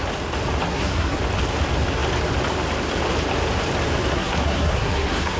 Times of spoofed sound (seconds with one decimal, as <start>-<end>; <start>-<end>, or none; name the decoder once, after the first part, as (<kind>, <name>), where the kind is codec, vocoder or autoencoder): 0.7-1.2 (codec, SNAC); 4.1-5.4